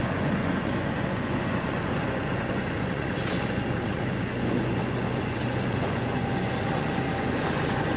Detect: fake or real fake